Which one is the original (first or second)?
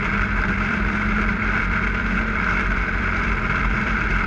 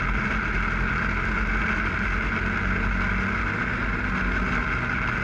second